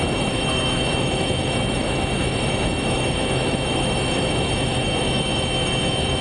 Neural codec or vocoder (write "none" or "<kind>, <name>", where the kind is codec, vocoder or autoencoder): autoencoder, DAC-VAE